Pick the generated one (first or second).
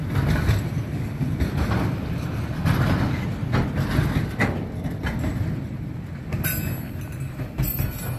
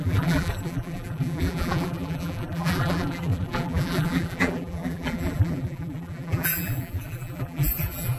second